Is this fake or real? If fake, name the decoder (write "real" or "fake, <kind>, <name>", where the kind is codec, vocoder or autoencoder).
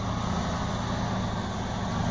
real